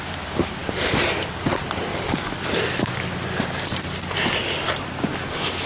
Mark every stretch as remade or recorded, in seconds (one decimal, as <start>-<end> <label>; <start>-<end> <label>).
0.0-1.9 recorded; 1.9-3.0 remade; 3.0-5.7 recorded